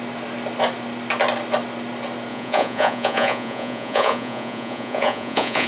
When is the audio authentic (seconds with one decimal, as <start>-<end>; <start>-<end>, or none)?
0.0-2.3